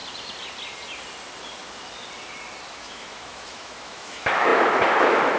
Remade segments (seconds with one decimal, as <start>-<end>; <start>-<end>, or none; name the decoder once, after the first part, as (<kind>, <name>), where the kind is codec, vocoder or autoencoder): 2.7-5.4 (autoencoder, DAC-VAE)